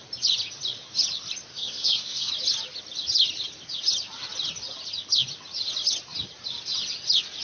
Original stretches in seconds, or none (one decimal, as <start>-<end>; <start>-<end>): 0.0-1.5; 2.3-7.4